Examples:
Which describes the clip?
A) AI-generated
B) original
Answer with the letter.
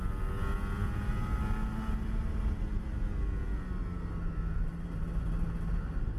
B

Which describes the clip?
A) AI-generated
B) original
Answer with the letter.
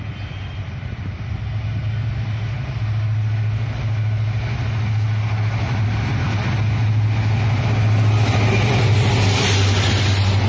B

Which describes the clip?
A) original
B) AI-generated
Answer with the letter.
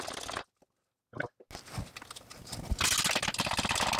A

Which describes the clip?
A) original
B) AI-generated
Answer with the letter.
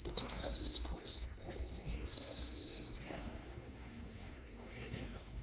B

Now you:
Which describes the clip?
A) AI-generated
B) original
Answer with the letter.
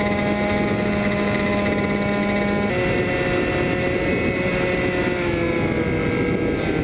B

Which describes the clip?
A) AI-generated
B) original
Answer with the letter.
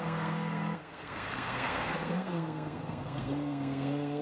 A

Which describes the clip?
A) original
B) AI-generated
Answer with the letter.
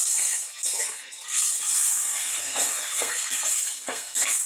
B